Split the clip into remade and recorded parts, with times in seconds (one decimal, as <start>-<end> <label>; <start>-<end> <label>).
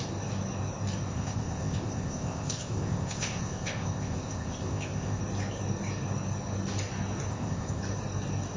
0.0-1.1 recorded; 1.1-5.2 remade; 5.2-7.3 recorded; 7.3-7.8 remade; 7.8-8.6 recorded